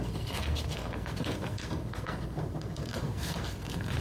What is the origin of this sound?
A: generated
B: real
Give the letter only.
A